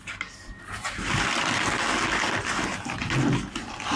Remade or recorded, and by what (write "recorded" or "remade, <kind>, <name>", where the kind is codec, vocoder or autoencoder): remade, vocoder, BigVGAN v2